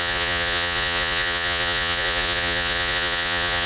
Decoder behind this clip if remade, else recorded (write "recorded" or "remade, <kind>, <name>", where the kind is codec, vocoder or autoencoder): remade, vocoder, Vocos